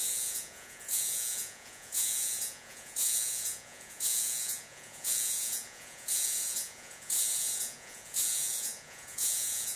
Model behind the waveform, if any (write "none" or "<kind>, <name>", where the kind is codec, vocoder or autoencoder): vocoder, Vocos